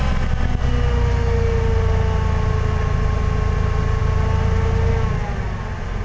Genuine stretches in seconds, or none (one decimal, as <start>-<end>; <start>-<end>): 0.0-6.0